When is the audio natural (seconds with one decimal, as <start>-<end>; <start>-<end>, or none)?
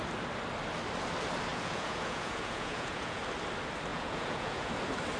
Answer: 0.0-1.5; 3.2-3.9; 4.7-5.2